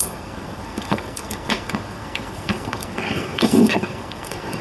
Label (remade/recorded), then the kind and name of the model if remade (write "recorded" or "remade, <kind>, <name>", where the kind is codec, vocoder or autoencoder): remade, codec, SNAC